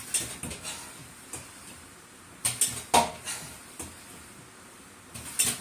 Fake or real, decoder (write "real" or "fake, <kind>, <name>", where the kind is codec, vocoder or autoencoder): real